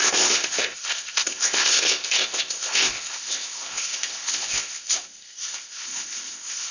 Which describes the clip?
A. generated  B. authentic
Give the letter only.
A